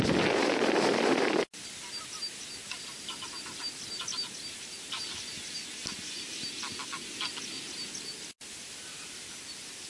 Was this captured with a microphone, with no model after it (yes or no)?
yes